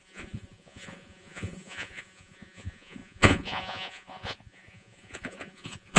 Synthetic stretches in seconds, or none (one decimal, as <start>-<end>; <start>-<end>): 0.0-6.0